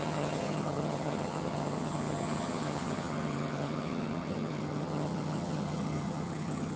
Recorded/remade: remade